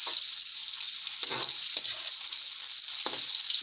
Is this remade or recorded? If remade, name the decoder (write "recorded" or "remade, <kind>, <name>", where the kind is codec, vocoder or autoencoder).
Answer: recorded